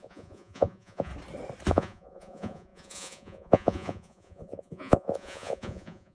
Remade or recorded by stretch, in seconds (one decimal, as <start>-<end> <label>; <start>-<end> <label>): 0.0-1.1 remade; 1.1-1.7 recorded; 1.7-6.1 remade